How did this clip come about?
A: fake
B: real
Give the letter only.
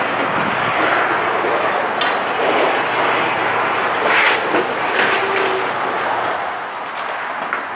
B